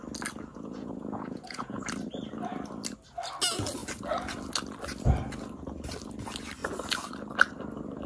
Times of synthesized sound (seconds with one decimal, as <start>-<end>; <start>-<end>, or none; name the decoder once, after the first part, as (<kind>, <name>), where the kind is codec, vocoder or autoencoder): 0.5-1.8 (vocoder, Vocos)